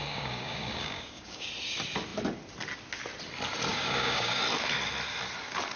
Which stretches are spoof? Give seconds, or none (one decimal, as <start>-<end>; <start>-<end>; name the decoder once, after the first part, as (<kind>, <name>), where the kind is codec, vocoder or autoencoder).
0.0-1.5 (codec, DAC); 3.7-4.4